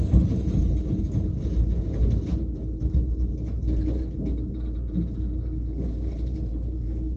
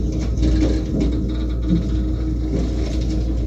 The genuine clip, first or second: second